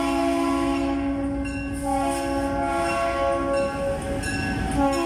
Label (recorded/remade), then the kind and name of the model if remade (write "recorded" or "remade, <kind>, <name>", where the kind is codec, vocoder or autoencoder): recorded